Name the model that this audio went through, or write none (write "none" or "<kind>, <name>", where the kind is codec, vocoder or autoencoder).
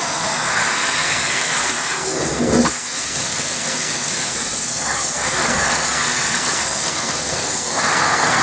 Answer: codec, SNAC